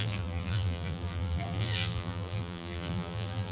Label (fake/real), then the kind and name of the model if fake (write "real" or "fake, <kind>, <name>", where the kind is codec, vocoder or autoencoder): fake, vocoder, BigVGAN v2